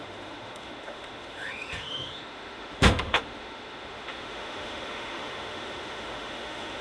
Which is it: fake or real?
fake